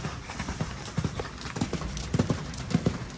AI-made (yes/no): no